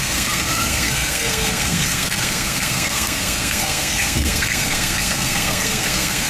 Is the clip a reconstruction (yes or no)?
yes